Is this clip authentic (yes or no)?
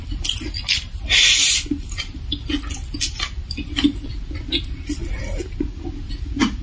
yes